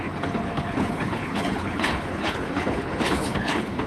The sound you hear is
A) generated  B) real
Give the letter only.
A